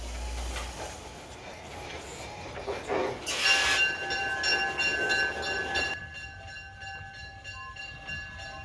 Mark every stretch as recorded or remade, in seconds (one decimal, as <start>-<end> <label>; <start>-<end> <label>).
0.0-8.6 recorded